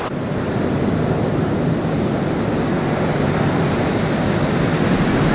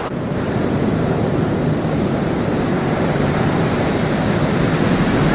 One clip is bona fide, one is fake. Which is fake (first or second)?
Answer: second